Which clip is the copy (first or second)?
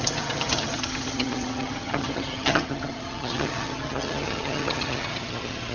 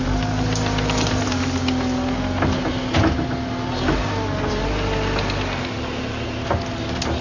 first